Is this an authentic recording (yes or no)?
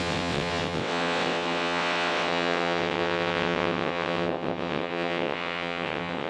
no